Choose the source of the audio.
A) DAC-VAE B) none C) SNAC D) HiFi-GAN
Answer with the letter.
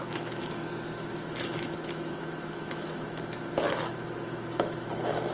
A